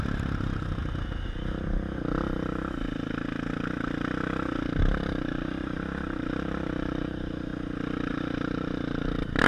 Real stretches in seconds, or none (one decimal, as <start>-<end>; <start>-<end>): 0.8-4.8; 7.5-8.1